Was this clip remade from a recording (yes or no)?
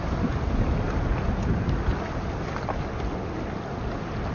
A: no